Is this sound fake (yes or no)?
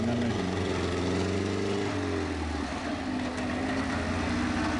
no